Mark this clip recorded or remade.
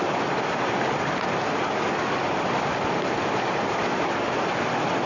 recorded